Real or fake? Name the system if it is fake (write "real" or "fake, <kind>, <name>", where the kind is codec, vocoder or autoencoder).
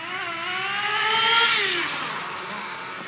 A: real